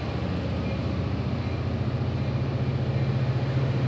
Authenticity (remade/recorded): recorded